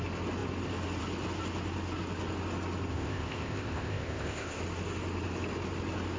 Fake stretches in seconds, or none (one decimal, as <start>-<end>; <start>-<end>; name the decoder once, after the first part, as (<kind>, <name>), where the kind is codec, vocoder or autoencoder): 2.9-4.6 (codec, ZipCodec)